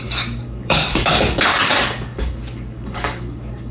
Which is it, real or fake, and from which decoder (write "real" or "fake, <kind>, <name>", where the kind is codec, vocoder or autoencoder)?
fake, codec, DAC